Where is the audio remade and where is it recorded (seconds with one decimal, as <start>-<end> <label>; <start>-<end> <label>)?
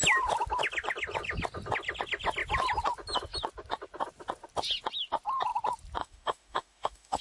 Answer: 0.0-6.0 recorded; 6.0-7.2 remade